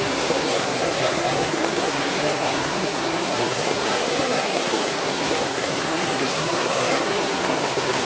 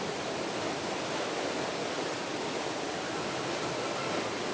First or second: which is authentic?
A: second